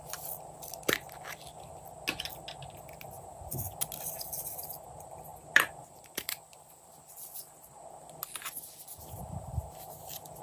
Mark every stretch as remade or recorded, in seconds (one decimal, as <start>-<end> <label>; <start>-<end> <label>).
0.0-5.3 recorded; 5.3-7.1 remade; 7.1-10.4 recorded